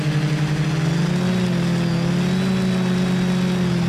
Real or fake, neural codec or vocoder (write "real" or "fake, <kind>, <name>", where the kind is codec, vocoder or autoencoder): real